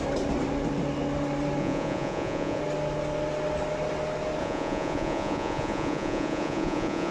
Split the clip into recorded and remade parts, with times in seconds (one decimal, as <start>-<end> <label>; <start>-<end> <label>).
0.0-1.6 recorded; 1.6-2.6 remade; 2.6-4.4 recorded; 4.4-7.1 remade